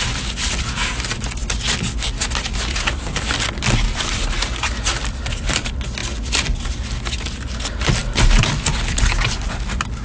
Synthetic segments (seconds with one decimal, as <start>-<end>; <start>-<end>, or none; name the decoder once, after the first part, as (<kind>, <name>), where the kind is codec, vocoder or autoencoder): none